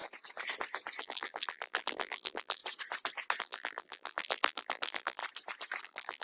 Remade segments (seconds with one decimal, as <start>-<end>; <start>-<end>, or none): 1.0-2.6; 3.4-5.2; 5.8-6.2